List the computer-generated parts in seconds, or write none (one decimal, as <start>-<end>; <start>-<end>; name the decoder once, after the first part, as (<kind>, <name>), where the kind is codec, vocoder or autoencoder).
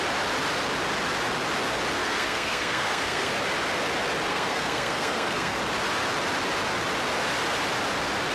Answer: 2.0-3.3 (codec, SNAC); 4.3-5.6